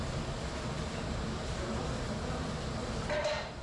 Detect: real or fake fake